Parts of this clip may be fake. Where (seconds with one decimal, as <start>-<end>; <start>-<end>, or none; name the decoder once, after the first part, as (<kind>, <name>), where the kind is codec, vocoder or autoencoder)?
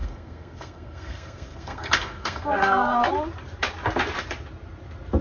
0.0-3.1 (codec, SNAC)